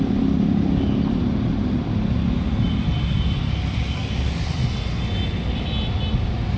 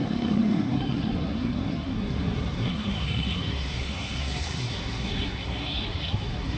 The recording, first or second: first